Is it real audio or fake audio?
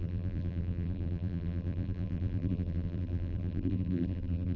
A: fake